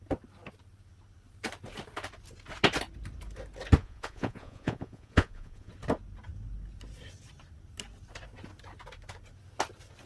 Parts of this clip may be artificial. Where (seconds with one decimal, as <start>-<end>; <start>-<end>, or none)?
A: 3.8-5.7